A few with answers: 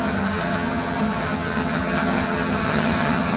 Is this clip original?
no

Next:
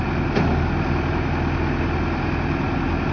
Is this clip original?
yes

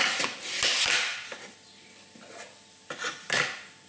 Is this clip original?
yes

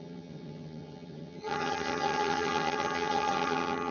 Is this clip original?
no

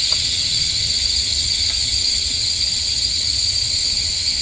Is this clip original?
no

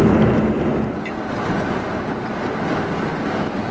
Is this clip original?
yes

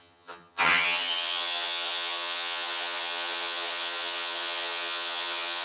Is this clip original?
no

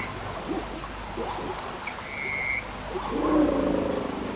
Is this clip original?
yes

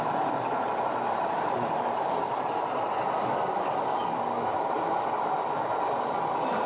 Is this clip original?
yes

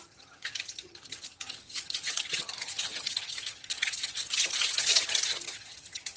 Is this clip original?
no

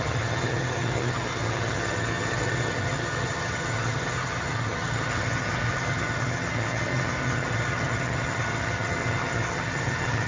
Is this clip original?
no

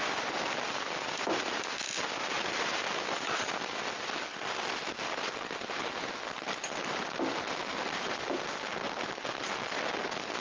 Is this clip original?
yes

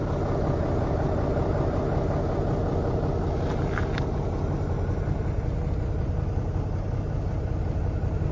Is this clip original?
yes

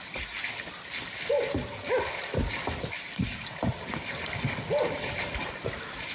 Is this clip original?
yes